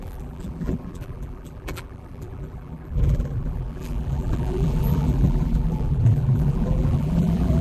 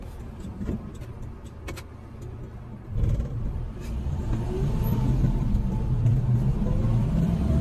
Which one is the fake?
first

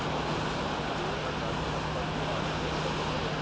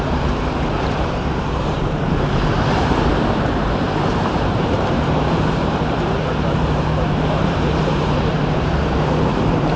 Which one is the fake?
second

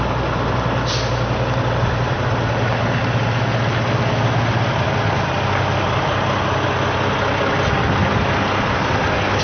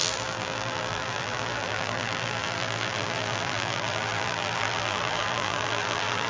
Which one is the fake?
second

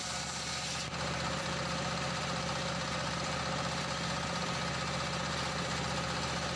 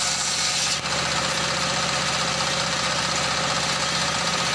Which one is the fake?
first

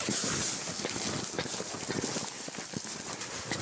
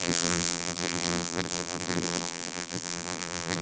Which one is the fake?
second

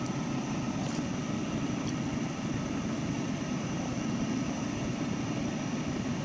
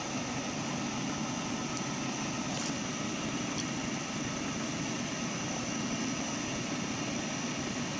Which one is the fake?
first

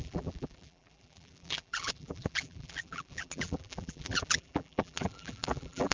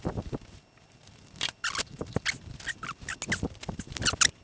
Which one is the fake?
first